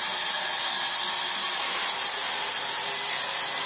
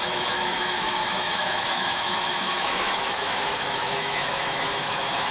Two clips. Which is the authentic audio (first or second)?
first